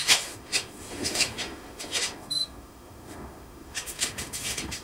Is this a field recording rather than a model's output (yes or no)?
no